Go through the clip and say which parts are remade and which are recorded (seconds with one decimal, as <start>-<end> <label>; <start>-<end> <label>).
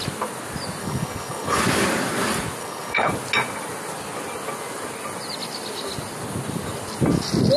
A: 0.0-0.8 recorded; 0.8-1.6 remade; 1.6-2.6 recorded; 2.6-3.1 remade; 3.1-7.6 recorded